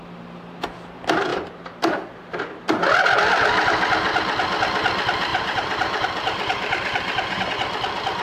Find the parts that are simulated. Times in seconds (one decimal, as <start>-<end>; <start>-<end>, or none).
1.3-2.8; 5.3-7.5